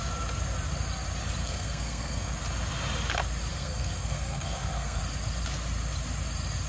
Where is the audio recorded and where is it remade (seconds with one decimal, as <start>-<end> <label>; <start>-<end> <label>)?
0.0-1.4 recorded; 1.4-2.3 remade; 2.3-3.5 recorded; 3.5-5.0 remade; 5.0-6.7 recorded

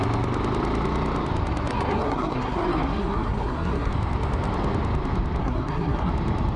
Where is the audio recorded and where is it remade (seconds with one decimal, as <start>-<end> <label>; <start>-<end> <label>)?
0.0-1.7 recorded; 1.7-3.9 remade; 3.9-5.4 recorded; 5.4-6.1 remade; 6.1-6.6 recorded